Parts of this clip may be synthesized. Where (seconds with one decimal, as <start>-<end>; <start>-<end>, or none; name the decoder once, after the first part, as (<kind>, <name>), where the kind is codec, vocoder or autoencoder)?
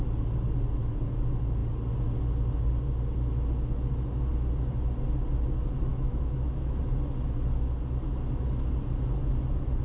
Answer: 5.9-6.8 (autoencoder, DAC-VAE)